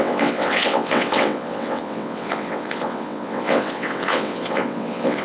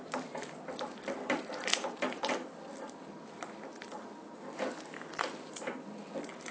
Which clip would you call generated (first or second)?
first